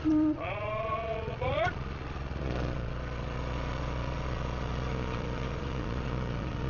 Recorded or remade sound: remade